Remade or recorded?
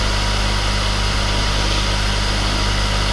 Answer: recorded